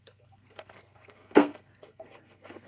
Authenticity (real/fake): fake